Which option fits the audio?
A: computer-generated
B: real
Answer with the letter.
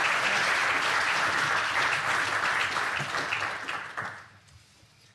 B